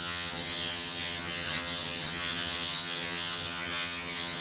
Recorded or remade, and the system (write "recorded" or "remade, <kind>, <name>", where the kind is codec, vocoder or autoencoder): remade, vocoder, HiFi-GAN